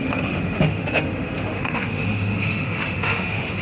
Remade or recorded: remade